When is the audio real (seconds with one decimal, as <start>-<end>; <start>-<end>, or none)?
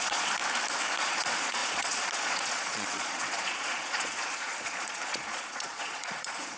0.4-1.0